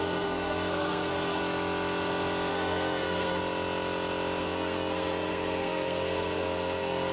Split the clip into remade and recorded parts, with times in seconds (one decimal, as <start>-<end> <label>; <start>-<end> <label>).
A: 0.0-1.4 remade; 1.4-2.5 recorded; 2.5-3.4 remade; 3.4-4.4 recorded; 4.4-7.1 remade